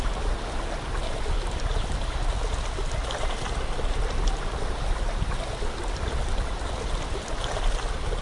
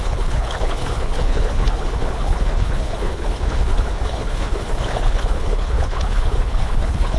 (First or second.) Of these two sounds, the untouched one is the first